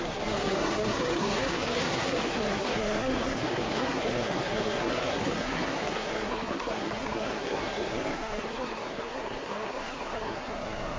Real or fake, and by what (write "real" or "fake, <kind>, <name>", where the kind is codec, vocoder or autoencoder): fake, codec, SNAC